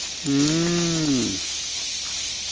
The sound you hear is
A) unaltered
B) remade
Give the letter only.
A